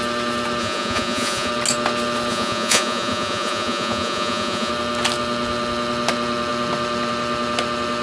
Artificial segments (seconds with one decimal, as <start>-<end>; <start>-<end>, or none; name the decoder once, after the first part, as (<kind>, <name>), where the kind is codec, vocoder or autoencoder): 0.6-1.5 (vocoder, Vocos); 2.3-4.7